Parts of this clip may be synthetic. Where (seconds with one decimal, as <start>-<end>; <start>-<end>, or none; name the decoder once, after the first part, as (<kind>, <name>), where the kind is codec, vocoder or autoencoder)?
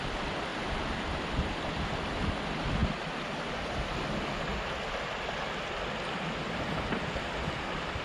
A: 0.0-2.8 (vocoder, BigVGAN v2); 7.6-8.0